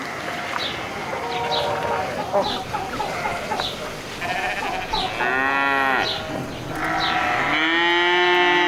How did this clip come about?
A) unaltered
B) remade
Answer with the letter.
A